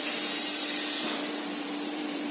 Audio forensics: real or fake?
fake